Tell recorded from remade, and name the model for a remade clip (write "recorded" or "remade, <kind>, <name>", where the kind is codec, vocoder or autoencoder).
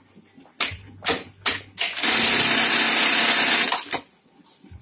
recorded